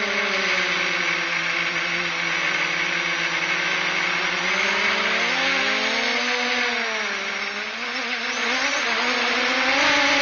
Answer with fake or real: real